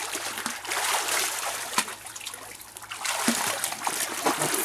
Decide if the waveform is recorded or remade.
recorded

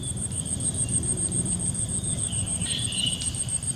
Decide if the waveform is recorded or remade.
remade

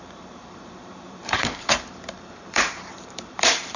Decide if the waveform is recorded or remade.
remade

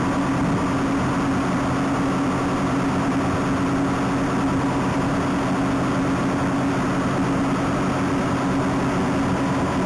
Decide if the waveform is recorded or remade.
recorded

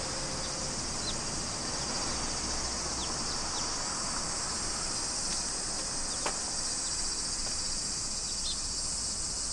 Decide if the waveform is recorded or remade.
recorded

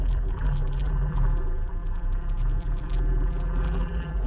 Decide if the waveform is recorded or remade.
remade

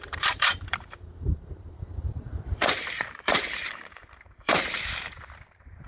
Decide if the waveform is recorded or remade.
remade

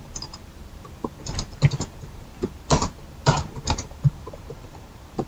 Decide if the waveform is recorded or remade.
remade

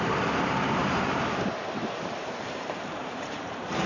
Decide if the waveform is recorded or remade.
remade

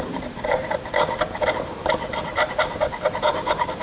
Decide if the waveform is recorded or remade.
remade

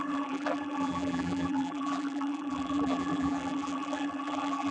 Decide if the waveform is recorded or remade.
remade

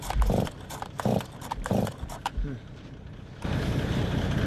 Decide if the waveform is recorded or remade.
remade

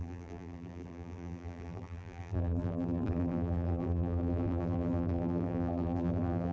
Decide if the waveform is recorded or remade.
remade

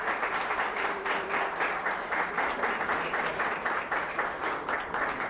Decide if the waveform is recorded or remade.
remade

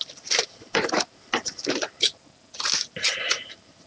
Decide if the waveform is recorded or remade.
recorded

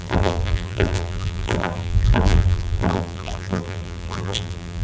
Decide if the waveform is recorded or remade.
remade